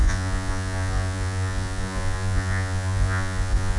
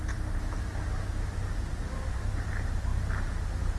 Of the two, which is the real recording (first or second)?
second